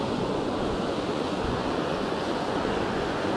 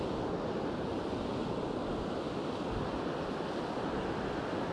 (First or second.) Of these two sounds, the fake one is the first